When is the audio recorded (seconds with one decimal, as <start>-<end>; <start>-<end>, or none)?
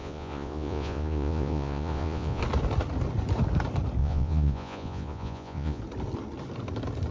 2.4-4.0; 5.8-7.1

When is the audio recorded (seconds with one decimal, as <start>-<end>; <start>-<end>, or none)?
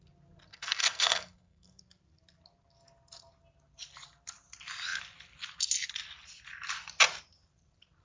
0.0-0.5; 1.8-8.0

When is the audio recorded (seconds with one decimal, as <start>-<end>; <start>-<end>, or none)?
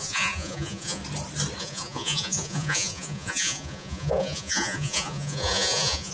1.0-1.6